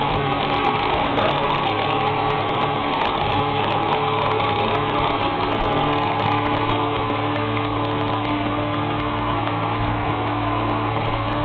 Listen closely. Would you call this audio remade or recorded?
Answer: remade